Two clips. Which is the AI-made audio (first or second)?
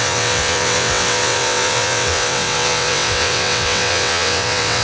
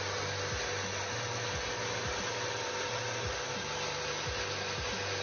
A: first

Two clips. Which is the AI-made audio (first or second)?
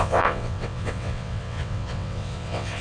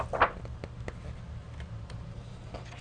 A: first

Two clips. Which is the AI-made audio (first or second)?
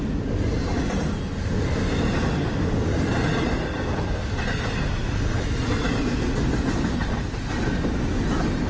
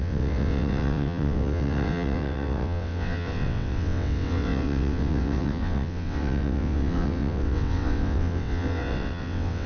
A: second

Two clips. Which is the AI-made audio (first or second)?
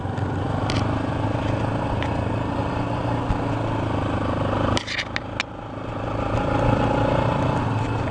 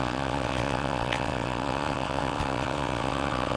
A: second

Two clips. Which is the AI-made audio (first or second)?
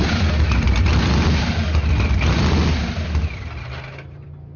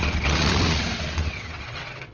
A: second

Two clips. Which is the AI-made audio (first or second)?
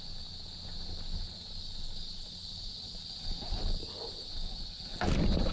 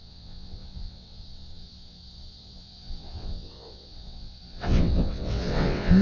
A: second